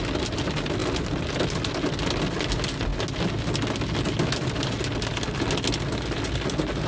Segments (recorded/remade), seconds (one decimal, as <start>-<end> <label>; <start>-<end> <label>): 0.0-6.9 recorded